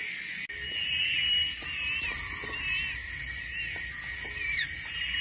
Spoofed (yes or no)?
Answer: no